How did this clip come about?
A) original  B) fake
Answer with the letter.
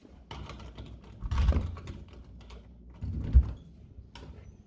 A